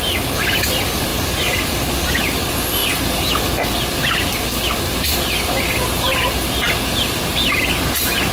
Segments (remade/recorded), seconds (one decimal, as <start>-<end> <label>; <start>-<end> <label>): 0.0-8.3 recorded